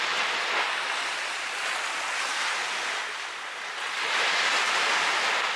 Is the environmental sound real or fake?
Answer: real